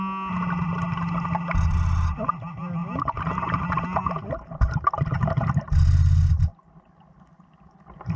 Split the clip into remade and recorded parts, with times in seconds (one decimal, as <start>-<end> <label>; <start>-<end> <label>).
0.0-2.8 recorded; 2.8-3.6 remade; 3.6-8.2 recorded